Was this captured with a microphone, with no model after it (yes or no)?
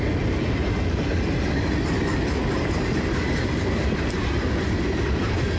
yes